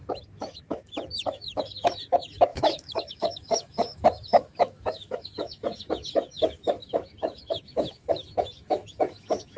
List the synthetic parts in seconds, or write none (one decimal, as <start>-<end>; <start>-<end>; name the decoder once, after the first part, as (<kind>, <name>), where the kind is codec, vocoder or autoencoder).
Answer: 0.0-9.6 (autoencoder, DAC-VAE)